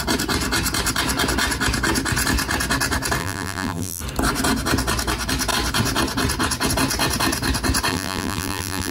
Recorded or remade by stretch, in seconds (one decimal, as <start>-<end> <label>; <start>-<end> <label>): 0.0-3.2 recorded; 3.2-4.0 remade; 4.0-7.9 recorded; 7.9-8.9 remade